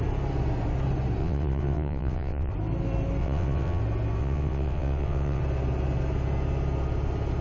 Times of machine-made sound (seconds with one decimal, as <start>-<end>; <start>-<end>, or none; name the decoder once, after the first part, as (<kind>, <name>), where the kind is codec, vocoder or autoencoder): 1.2-2.5 (vocoder, WaveNeXt); 3.2-3.8; 4.2-5.4

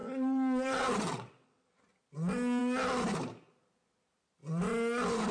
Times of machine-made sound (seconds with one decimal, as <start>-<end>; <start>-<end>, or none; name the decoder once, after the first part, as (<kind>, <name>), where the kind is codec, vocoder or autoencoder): 0.0-1.8 (vocoder, WaveNeXt)

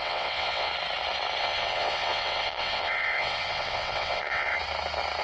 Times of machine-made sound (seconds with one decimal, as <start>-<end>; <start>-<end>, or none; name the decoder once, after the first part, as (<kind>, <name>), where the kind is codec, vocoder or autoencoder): 0.0-0.7 (vocoder, WaveNeXt); 1.4-4.5

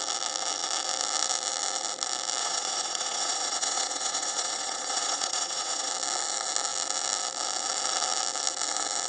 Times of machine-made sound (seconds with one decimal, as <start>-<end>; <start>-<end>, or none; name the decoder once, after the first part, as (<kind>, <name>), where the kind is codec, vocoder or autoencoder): 2.4-5.9 (vocoder, WaveNeXt)

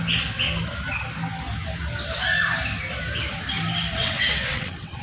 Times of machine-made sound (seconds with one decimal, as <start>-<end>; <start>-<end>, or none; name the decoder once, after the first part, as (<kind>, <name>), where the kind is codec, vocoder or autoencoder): 4.0-5.0 (vocoder, WaveNeXt)